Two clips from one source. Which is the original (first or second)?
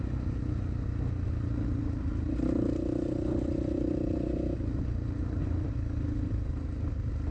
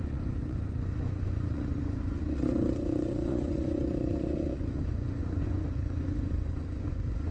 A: first